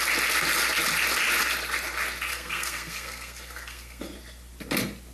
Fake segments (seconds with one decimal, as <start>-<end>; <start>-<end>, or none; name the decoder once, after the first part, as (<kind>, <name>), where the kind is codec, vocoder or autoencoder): 2.3-4.0 (codec, SNAC)